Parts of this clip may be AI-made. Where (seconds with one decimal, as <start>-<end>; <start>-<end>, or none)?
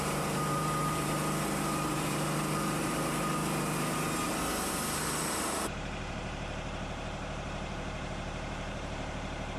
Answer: 0.0-3.4; 4.6-9.6